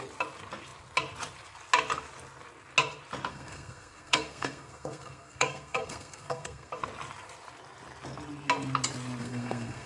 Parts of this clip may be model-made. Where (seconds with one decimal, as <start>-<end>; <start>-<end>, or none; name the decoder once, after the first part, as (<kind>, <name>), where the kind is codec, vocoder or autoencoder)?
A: 3.3-6.7 (codec, SNAC); 9.2-9.9